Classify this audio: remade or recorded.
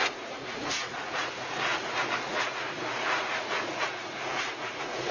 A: remade